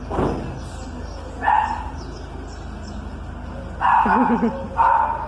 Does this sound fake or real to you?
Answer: real